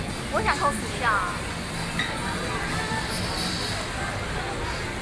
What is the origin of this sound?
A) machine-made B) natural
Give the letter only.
B